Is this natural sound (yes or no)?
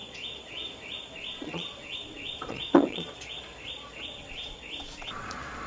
no